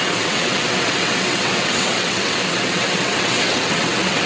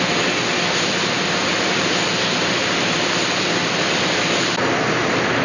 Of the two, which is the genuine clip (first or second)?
second